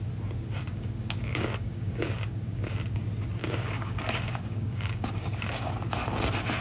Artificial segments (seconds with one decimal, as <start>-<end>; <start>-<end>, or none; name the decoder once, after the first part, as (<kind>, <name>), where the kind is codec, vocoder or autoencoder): 0.7-2.7 (codec, DAC); 3.4-5.7